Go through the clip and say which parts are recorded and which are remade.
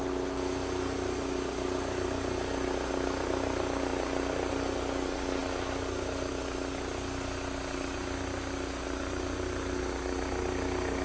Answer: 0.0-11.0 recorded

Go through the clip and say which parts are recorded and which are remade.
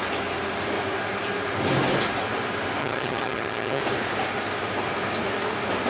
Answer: 0.0-2.8 recorded; 2.8-3.8 remade; 3.8-5.9 recorded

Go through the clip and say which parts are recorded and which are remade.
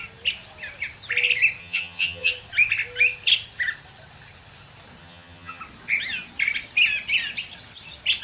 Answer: 0.0-1.6 recorded; 1.6-2.3 remade; 2.3-5.0 recorded; 5.0-5.6 remade; 5.6-8.2 recorded